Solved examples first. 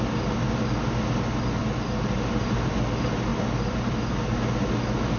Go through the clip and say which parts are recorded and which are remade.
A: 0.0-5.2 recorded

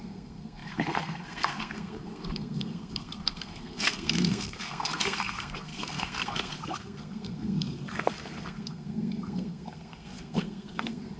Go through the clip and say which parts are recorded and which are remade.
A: 0.0-11.2 remade